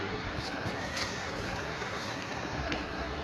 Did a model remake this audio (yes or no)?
yes